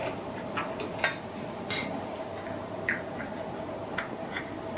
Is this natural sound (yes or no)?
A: yes